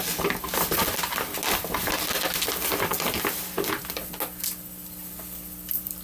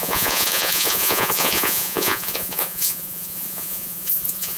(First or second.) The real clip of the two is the first